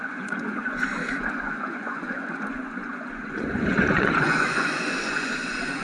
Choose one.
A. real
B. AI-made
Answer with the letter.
B